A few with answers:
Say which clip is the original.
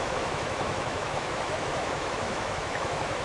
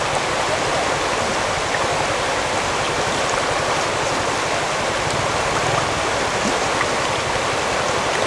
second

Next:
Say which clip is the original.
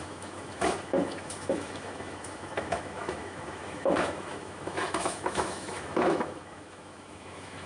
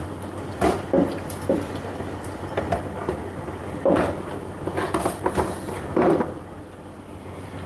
second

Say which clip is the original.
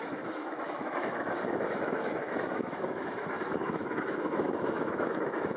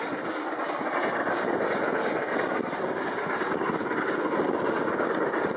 second